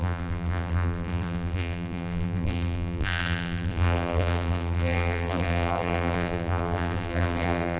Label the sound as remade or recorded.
remade